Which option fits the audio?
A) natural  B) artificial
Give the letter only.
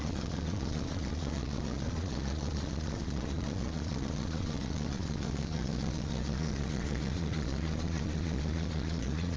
B